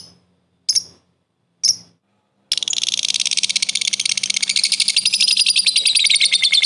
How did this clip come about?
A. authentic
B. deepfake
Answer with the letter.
A